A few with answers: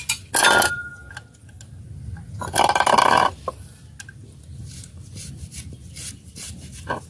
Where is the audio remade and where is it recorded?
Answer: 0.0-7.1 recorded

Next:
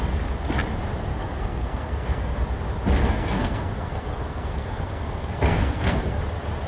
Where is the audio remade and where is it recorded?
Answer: 0.0-1.1 recorded; 1.1-2.4 remade; 2.4-3.0 recorded; 3.0-6.2 remade; 6.2-6.7 recorded

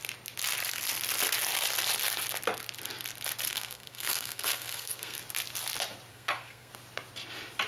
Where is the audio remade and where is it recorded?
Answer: 0.0-3.5 recorded; 3.5-5.2 remade; 5.2-6.1 recorded; 6.1-6.7 remade; 6.7-7.7 recorded

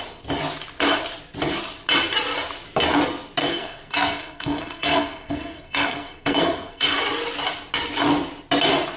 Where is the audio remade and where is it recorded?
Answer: 0.0-3.4 recorded; 3.4-7.0 remade; 7.0-9.0 recorded

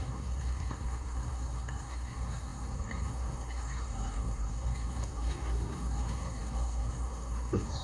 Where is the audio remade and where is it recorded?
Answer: 0.0-7.8 remade